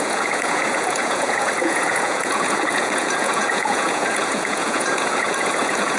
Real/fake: fake